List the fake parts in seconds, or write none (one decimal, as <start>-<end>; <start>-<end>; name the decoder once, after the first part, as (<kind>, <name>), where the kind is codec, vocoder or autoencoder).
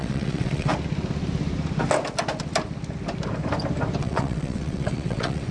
0.0-0.7 (vocoder, WaveNeXt); 4.0-5.5